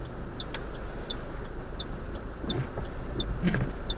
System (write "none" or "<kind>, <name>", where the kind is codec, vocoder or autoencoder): none